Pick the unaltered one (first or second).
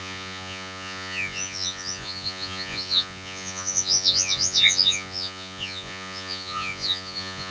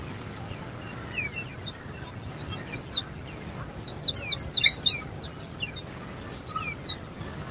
second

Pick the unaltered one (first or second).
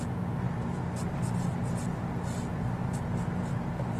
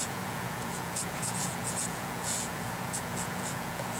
first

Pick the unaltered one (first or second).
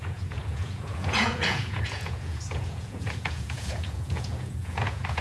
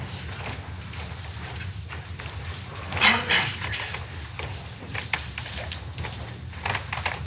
second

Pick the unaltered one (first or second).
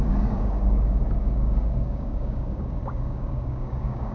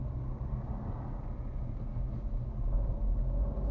second